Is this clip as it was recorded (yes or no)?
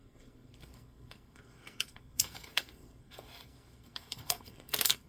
no